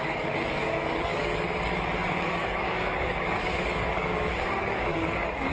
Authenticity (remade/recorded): remade